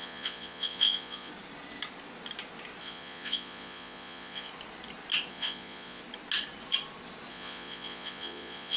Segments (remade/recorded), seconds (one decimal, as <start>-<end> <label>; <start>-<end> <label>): 0.0-1.3 remade; 1.3-2.8 recorded; 2.8-4.5 remade; 4.5-5.3 recorded; 5.3-6.0 remade; 6.0-7.3 recorded; 7.3-8.8 remade